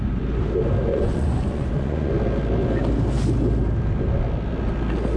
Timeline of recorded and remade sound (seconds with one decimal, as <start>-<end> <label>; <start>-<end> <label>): 0.0-0.9 recorded; 0.9-2.1 remade; 2.1-5.2 recorded